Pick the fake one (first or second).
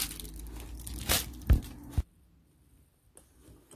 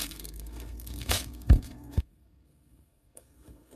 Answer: second